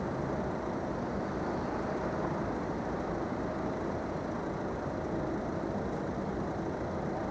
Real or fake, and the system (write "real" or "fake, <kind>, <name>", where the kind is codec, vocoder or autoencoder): real